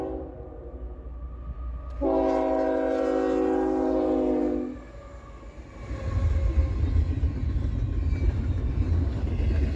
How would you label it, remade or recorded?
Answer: recorded